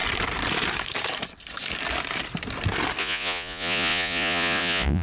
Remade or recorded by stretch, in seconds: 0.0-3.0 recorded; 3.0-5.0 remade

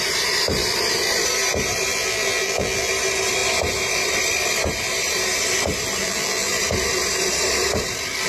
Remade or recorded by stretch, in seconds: 0.0-1.9 recorded; 1.9-2.9 remade; 2.9-6.0 recorded; 6.0-6.6 remade; 6.6-8.3 recorded